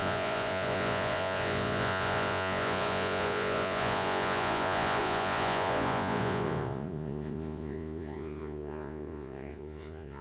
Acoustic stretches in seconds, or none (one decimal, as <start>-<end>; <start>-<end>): none